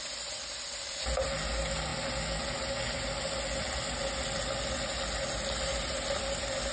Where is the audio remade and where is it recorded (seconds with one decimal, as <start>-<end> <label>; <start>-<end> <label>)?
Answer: 0.0-6.7 recorded

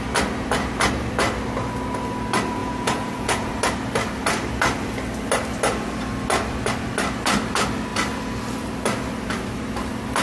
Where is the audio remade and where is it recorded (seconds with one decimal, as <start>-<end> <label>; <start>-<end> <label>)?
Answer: 0.0-2.6 recorded; 2.6-3.5 remade; 3.5-10.2 recorded

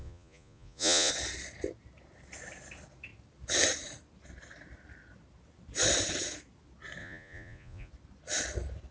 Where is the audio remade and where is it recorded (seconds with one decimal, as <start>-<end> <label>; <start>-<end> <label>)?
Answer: 0.0-1.1 remade; 1.1-7.0 recorded; 7.0-7.9 remade; 7.9-8.9 recorded